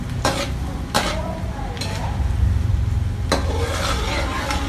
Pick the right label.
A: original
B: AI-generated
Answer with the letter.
A